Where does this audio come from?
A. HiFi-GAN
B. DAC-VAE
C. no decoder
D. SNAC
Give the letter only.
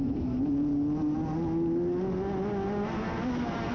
C